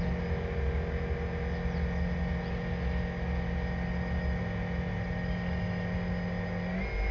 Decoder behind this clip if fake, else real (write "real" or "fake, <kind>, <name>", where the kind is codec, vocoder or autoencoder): real